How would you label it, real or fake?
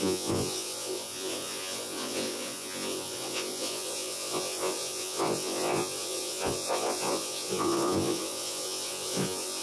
fake